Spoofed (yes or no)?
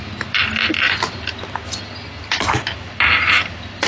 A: no